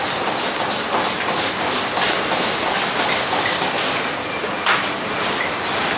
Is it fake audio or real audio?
real